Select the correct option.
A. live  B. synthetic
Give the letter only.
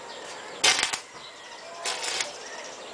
A